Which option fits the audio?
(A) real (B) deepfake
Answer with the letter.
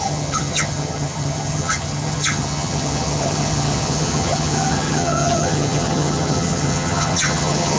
B